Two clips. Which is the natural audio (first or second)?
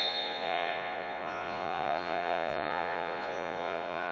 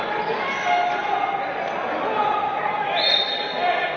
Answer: second